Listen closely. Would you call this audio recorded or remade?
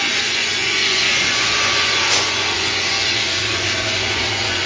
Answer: remade